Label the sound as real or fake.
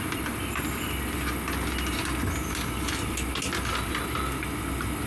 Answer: real